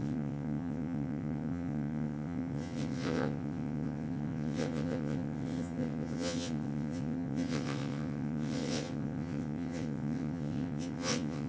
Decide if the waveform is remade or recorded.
remade